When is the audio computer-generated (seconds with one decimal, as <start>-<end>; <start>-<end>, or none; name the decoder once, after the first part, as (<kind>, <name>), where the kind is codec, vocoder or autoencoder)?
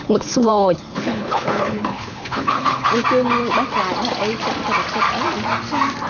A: 0.0-2.9 (codec, HILCodec)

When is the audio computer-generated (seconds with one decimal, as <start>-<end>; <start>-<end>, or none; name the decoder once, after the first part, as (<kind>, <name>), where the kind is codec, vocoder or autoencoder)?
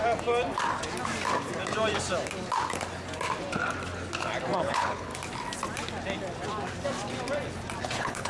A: 4.6-5.1 (codec, HILCodec); 7.8-8.3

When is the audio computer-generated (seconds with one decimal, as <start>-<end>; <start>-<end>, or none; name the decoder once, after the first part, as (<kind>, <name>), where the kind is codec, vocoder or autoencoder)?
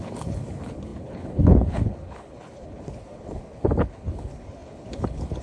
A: 0.0-5.4 (codec, HILCodec)